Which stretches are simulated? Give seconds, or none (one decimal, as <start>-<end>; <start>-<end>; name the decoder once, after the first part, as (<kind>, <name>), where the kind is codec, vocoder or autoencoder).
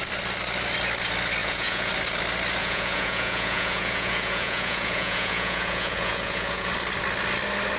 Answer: 1.4-1.9 (vocoder, Vocos); 2.6-6.7